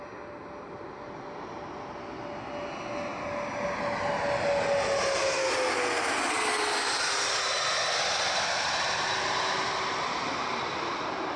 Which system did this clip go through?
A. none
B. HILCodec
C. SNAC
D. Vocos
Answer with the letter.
A